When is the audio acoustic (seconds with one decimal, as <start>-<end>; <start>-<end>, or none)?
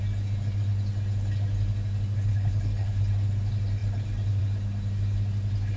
0.0-2.3; 3.0-5.8